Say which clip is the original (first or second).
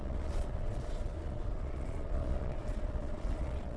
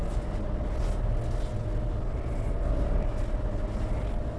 second